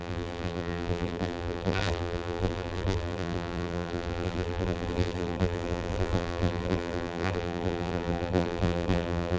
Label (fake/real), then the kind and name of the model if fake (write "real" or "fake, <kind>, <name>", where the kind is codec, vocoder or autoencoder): fake, vocoder, BigVGAN v2